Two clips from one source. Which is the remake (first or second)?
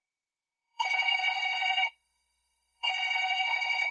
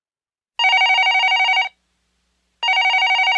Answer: first